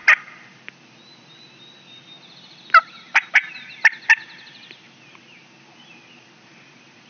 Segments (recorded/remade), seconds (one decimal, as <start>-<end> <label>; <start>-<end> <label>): 0.0-3.0 recorded; 3.0-3.4 remade; 3.4-5.6 recorded; 5.6-7.1 remade